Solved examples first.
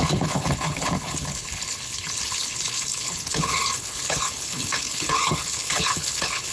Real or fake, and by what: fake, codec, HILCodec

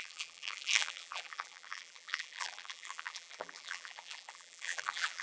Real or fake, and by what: fake, vocoder, BigVGAN v2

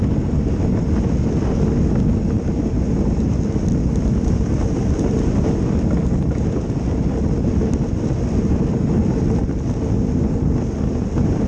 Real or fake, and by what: real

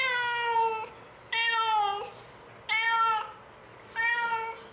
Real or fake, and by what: real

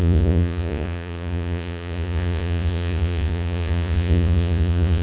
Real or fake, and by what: fake, vocoder, Vocos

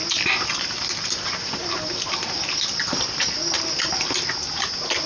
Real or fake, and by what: real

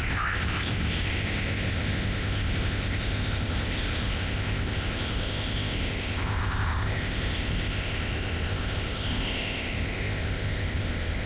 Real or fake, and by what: fake, codec, ZipCodec